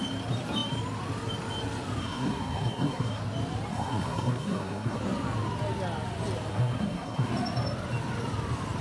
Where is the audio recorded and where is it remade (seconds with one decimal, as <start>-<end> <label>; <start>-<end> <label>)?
0.0-2.0 recorded; 2.0-3.2 remade; 3.2-3.7 recorded; 3.7-5.0 remade; 5.0-6.5 recorded; 6.5-7.3 remade; 7.3-8.8 recorded